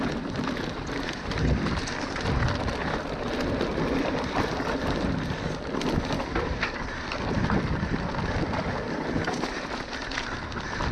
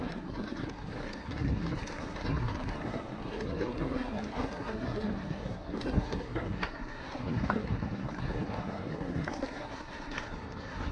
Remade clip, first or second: second